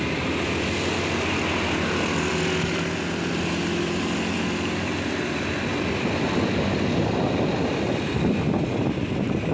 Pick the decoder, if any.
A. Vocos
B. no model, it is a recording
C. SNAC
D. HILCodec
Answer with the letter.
B